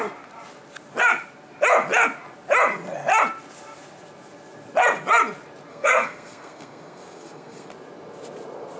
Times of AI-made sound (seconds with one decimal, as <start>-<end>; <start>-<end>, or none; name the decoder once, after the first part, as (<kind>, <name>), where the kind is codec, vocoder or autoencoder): 5.7-7.7 (codec, SNAC)